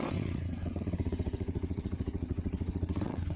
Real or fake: fake